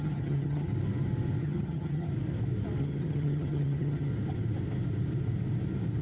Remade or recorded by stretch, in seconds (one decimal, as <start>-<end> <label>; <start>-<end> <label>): 0.0-0.7 remade; 0.7-1.4 recorded; 1.4-2.1 remade; 2.1-2.8 recorded; 2.8-4.1 remade; 4.1-6.0 recorded